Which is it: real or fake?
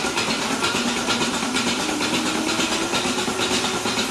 real